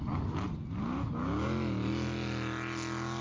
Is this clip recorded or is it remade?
recorded